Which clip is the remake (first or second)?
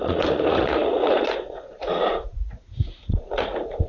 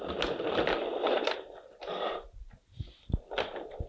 first